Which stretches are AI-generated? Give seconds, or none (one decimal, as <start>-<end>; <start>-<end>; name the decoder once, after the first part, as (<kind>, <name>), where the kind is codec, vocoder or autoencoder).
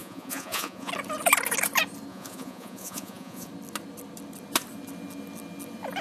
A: 0.0-0.9 (vocoder, Vocos); 2.1-3.5